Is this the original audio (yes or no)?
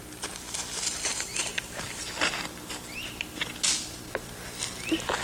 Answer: yes